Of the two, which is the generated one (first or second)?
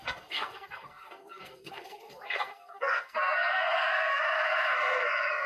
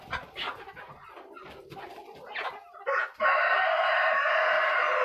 first